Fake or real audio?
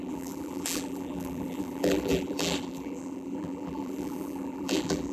fake